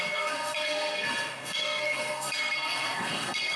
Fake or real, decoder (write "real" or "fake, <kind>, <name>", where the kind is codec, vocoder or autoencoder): fake, codec, SNAC